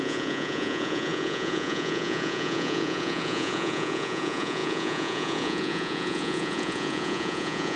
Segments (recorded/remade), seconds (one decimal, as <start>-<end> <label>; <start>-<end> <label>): 0.0-7.8 remade